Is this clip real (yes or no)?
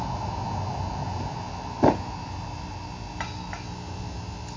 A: yes